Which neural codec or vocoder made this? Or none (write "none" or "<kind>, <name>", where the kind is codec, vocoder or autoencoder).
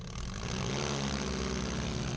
none